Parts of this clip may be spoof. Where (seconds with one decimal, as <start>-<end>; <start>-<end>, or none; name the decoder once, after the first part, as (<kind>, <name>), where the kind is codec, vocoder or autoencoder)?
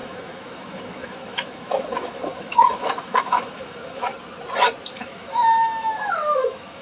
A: 0.0-4.1 (autoencoder, DAC-VAE); 4.9-6.8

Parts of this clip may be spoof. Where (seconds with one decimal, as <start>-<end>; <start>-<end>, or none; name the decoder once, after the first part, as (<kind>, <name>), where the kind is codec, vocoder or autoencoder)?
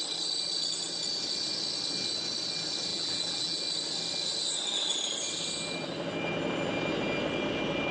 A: 2.9-3.6 (vocoder, BigVGAN v2)